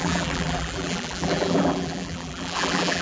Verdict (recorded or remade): remade